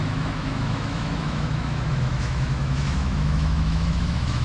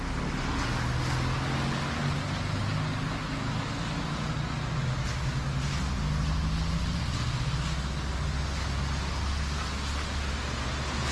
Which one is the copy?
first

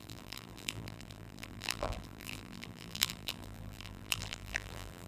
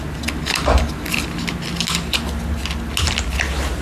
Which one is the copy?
first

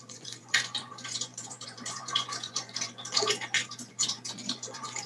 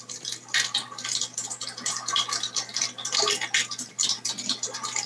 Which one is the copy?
first